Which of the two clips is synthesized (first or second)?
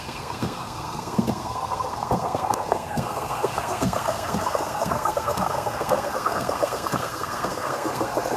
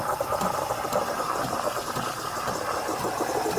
first